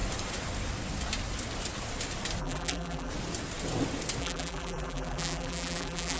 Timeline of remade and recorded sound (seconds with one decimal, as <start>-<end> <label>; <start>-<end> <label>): 0.0-2.4 recorded; 2.4-3.1 remade; 3.1-4.2 recorded; 4.2-6.2 remade